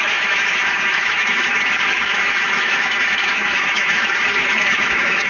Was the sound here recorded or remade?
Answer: remade